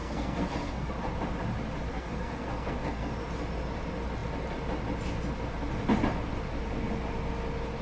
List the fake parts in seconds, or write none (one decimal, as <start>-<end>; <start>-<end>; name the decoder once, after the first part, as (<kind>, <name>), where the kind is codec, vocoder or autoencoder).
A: 0.0-0.9 (codec, SNAC); 1.9-3.1